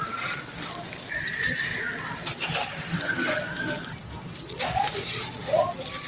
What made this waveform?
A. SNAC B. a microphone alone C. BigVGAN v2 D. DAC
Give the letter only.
B